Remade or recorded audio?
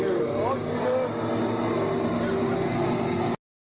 recorded